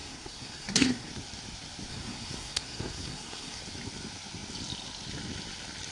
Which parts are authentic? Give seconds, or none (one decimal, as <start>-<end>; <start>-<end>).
1.1-1.9; 3.6-5.9